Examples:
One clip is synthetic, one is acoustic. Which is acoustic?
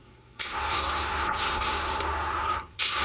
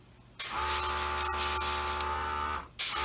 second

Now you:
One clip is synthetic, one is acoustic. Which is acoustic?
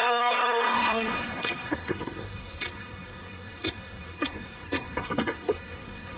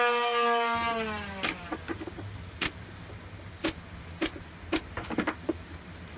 second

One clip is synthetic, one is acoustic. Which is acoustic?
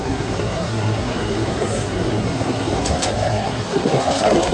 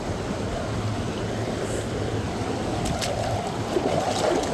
second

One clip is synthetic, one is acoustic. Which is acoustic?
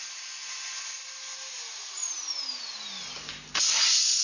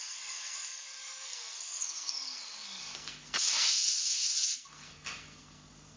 first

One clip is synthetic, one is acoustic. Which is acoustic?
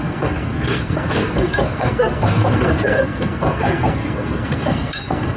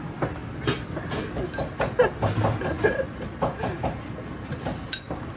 second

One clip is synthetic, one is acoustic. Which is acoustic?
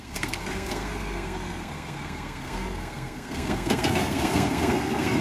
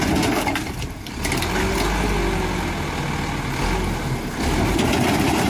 second